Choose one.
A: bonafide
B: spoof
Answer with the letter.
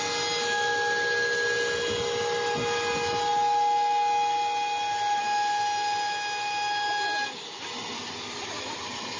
A